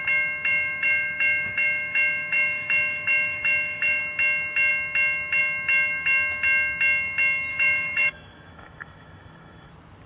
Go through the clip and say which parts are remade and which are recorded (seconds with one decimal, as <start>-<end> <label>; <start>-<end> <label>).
0.0-0.5 recorded; 0.5-4.0 remade; 4.0-7.5 recorded; 7.5-9.7 remade; 9.7-10.1 recorded